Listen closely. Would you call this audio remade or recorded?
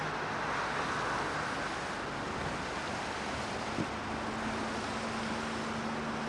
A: recorded